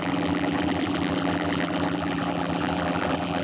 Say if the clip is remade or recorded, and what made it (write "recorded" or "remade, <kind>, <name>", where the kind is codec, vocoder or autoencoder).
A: remade, vocoder, BigVGAN v2